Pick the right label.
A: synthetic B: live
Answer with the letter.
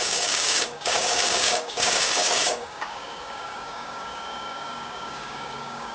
A